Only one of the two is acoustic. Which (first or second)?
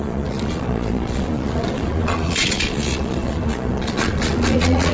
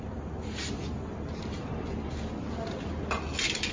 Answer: second